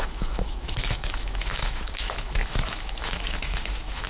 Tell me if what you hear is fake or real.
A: fake